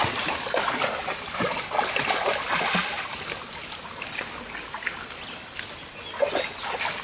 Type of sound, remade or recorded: recorded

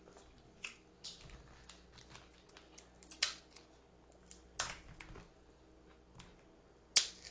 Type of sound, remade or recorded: recorded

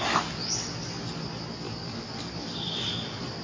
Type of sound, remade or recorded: recorded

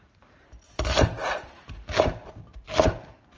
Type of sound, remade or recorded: recorded